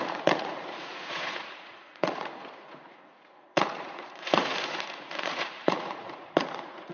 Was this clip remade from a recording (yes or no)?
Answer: yes